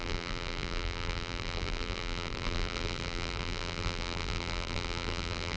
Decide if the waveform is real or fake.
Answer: fake